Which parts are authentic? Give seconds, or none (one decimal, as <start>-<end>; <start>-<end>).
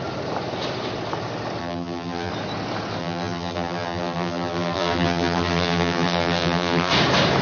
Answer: 0.0-1.6; 2.3-3.0; 6.9-7.4